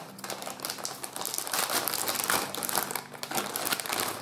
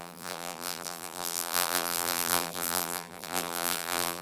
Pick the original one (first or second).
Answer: first